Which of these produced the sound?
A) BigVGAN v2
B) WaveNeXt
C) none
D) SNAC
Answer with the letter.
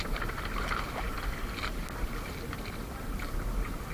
C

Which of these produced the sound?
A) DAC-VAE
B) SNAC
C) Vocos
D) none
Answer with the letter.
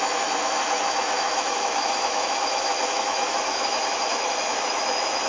A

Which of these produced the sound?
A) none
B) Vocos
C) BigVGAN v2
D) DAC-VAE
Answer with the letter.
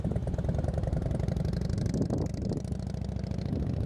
A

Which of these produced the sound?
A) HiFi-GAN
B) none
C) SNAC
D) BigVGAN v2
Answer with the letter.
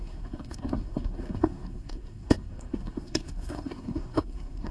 C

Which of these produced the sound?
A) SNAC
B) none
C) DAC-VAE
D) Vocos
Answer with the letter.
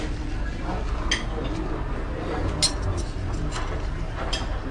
B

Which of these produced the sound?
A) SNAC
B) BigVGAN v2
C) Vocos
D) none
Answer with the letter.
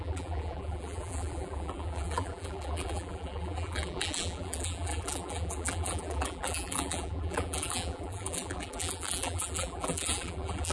B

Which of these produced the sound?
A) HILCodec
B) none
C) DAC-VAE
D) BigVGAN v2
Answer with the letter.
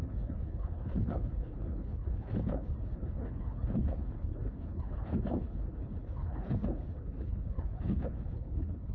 A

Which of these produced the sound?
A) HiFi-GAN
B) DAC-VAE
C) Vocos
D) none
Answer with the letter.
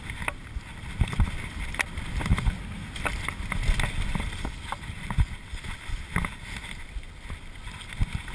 D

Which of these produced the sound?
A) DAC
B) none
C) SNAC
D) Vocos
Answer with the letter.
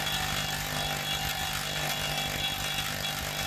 B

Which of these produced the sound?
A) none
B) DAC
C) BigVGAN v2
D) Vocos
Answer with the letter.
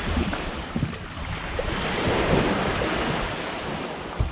A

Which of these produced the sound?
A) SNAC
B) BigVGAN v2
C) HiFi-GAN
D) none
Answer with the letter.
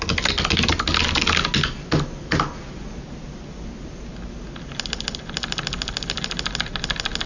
D